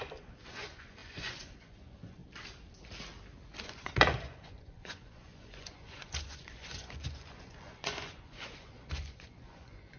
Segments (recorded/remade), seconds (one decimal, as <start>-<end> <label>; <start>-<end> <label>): 0.0-2.2 remade; 2.2-3.6 recorded; 3.6-10.0 remade